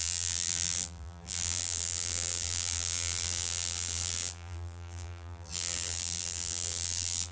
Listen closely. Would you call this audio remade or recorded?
remade